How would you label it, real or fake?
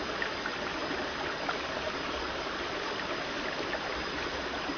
real